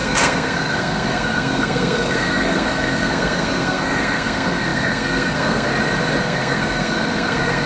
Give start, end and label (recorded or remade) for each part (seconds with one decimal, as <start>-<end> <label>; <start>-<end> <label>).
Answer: 0.0-5.7 remade; 5.7-6.2 recorded; 6.2-7.7 remade